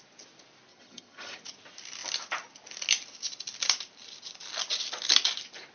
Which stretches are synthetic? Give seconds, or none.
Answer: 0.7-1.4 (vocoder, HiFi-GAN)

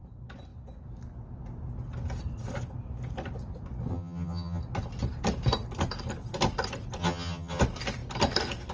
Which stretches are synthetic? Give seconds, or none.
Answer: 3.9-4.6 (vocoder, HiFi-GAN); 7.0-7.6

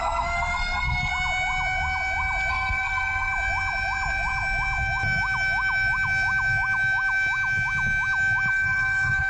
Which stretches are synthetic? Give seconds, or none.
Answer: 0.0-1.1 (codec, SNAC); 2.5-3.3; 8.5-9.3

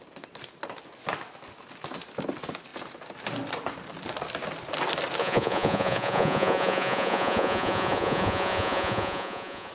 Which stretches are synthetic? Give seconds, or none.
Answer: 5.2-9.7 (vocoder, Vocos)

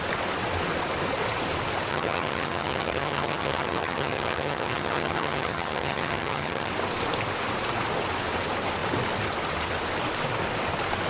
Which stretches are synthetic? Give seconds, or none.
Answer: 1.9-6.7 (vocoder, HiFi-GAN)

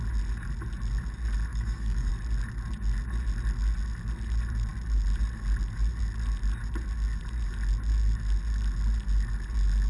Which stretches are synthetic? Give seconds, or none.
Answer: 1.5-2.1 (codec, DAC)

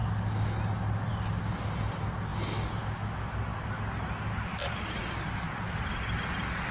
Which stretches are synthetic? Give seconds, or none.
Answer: none

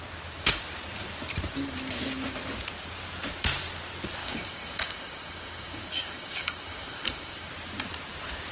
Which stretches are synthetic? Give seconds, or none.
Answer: 4.2-7.5 (codec, DAC)